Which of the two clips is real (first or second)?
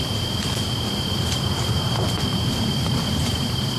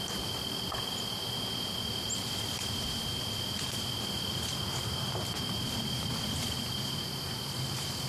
second